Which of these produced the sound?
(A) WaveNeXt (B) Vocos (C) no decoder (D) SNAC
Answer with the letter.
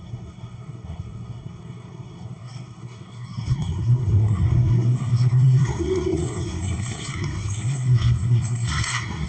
D